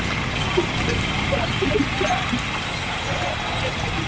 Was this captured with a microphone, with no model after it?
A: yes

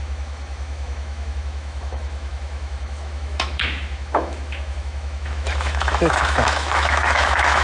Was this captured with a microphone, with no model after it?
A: no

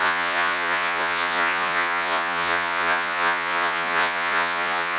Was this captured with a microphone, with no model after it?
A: no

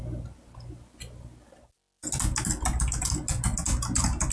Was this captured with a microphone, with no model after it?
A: yes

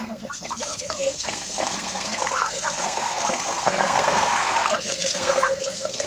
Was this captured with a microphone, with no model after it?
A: no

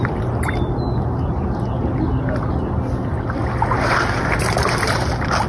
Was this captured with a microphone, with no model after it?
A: yes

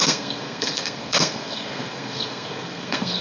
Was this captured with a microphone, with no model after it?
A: no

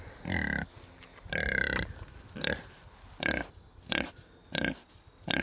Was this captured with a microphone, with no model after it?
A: yes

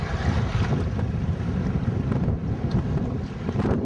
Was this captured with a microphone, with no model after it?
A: no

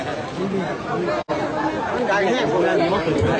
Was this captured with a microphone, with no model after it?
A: yes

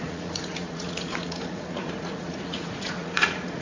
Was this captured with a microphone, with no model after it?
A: no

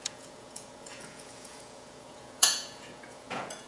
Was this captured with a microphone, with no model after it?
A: no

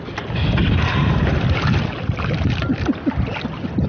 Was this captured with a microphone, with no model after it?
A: yes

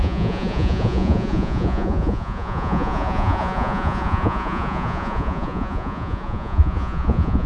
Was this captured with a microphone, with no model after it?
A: no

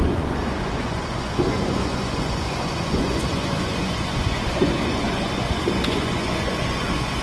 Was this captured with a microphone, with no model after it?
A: no